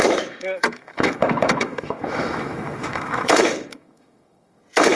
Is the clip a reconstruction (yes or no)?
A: yes